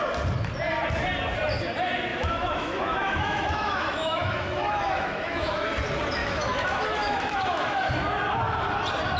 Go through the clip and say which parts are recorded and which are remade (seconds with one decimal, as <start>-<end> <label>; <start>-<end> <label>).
0.0-2.1 recorded; 2.1-5.7 remade; 5.7-6.2 recorded; 6.2-7.9 remade; 7.9-9.2 recorded